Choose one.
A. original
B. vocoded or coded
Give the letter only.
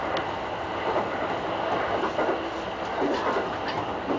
A